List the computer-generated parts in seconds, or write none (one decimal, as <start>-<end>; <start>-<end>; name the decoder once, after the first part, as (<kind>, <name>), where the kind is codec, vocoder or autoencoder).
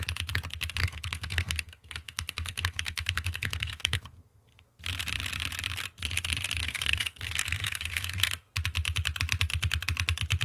0.8-4.8 (codec, SNAC); 6.6-8.5